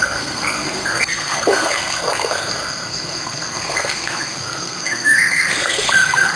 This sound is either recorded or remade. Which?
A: remade